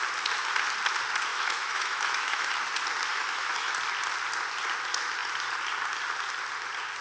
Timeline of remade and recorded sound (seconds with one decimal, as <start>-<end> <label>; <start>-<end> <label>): 0.0-1.3 recorded; 1.3-2.5 remade; 2.5-3.1 recorded; 3.1-3.7 remade; 3.7-7.0 recorded